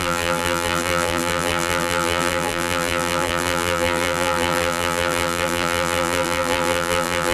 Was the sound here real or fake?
fake